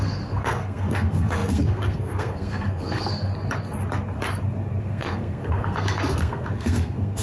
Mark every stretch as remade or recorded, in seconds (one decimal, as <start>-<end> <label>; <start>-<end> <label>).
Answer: 0.0-3.3 remade; 3.3-4.8 recorded; 4.8-7.2 remade